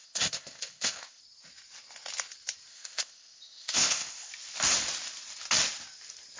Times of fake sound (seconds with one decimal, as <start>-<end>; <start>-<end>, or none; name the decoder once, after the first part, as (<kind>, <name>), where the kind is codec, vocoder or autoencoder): 0.0-1.2 (codec, ZipCodec); 2.7-4.3